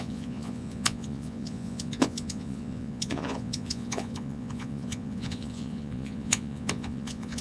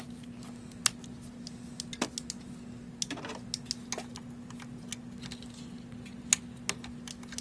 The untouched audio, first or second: second